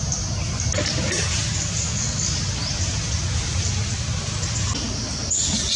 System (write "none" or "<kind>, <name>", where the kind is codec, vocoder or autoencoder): none